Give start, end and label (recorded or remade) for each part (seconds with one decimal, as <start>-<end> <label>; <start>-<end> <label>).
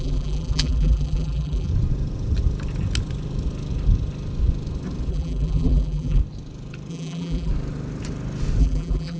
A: 0.0-1.7 remade; 1.7-5.1 recorded; 5.1-6.2 remade; 6.2-6.9 recorded; 6.9-7.5 remade; 7.5-8.6 recorded; 8.6-9.2 remade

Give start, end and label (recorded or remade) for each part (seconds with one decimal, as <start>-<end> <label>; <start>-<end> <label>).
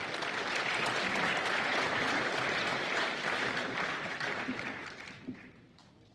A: 0.0-2.0 recorded; 2.0-6.1 remade